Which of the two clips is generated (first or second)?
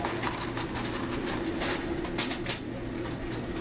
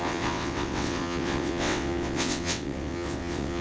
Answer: second